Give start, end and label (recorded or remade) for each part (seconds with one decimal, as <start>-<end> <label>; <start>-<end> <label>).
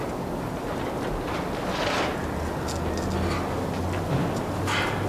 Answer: 0.0-5.1 recorded